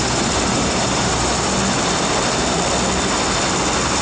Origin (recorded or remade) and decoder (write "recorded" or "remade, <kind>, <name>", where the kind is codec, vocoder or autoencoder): recorded